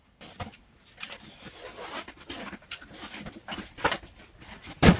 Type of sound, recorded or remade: remade